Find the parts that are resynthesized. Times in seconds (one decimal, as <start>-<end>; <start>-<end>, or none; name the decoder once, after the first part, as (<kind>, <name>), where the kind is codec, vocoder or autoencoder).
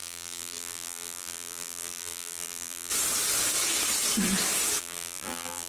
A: 0.0-2.9 (vocoder, BigVGAN v2); 4.8-5.7